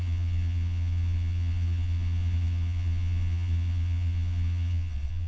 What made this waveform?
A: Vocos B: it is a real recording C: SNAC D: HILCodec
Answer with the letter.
A